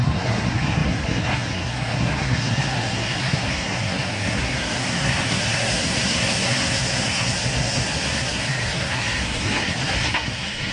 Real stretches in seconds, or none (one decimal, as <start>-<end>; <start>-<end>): none